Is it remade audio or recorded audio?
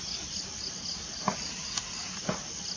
recorded